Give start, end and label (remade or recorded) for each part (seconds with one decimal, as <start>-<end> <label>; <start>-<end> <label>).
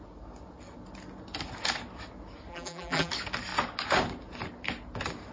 0.0-2.5 recorded; 2.5-3.1 remade; 3.1-5.3 recorded